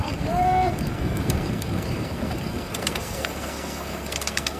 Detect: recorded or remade remade